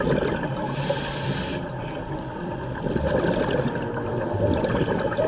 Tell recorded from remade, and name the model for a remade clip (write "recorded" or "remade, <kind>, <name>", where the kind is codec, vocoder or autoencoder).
recorded